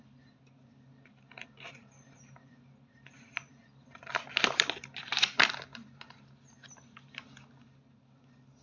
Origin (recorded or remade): recorded